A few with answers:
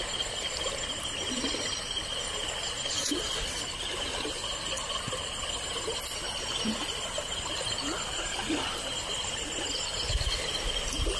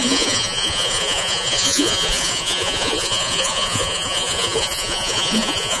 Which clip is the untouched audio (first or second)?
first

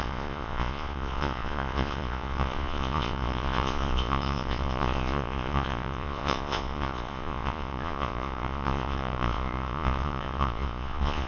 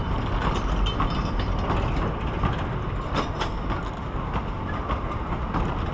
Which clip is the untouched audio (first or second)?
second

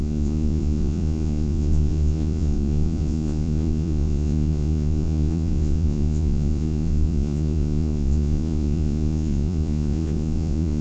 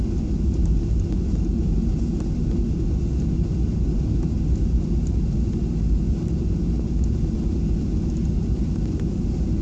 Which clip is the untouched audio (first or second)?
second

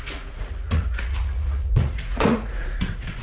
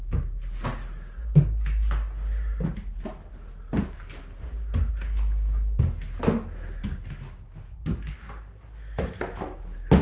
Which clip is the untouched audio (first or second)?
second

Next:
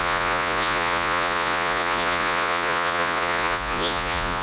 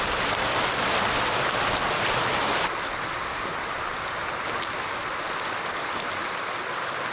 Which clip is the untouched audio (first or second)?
second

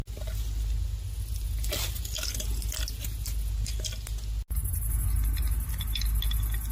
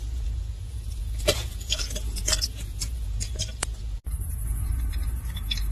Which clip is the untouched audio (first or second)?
first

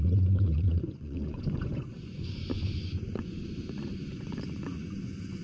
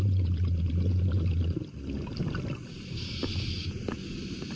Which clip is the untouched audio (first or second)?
second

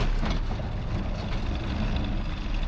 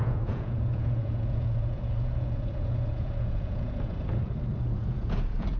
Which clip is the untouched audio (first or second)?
first